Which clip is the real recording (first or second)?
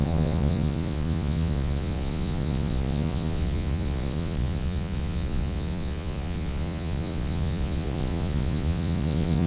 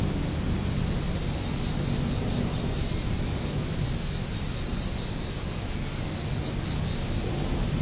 second